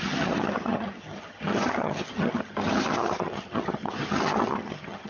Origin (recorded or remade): remade